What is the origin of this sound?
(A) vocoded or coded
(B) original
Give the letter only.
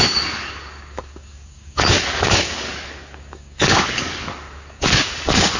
A